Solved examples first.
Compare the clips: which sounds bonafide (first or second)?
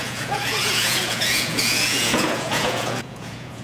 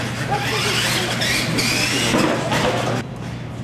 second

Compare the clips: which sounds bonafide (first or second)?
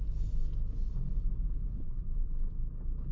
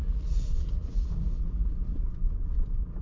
first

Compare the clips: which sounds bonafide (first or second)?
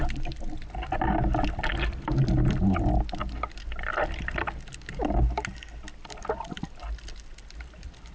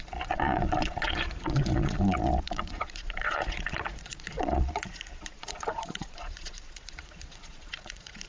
first